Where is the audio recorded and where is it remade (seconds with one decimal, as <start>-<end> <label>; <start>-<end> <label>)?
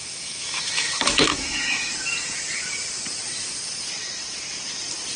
0.0-1.9 remade; 1.9-5.2 recorded